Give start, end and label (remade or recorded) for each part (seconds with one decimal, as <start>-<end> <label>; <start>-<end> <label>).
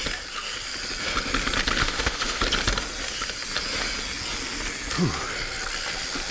0.0-1.8 recorded; 1.8-2.4 remade; 2.4-6.3 recorded